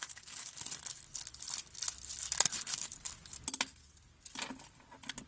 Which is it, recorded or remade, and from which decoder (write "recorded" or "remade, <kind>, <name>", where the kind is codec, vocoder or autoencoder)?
recorded